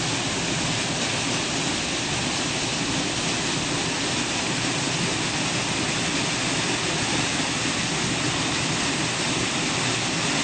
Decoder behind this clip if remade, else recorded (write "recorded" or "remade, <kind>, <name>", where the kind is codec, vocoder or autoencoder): recorded